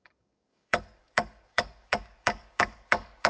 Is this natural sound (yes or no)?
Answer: no